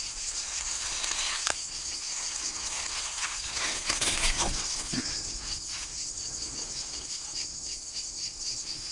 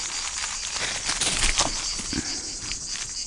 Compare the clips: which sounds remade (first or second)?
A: first